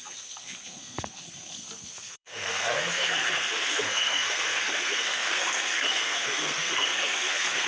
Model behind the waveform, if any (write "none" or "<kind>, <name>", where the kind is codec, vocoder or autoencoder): codec, SNAC